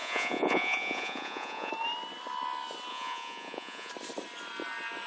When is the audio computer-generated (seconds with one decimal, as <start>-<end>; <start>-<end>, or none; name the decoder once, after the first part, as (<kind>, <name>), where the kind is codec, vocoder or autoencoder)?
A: 0.0-1.7 (vocoder, Vocos); 2.9-3.9